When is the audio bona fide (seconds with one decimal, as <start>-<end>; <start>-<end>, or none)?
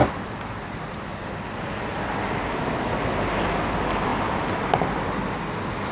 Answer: 0.0-5.9